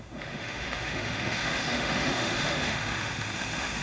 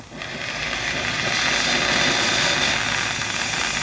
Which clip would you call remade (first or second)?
first